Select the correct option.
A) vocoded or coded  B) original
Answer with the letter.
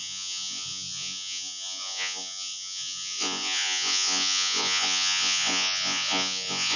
A